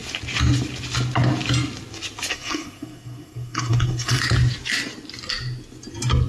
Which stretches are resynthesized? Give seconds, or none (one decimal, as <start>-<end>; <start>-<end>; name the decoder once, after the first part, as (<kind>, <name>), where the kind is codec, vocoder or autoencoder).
2.3-4.2 (codec, SNAC)